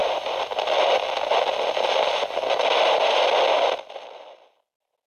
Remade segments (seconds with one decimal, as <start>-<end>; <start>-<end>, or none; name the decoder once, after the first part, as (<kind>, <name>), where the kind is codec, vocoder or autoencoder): none